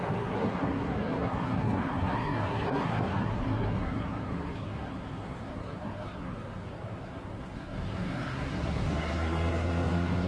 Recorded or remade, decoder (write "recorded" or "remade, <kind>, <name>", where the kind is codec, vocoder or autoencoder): remade, codec, SNAC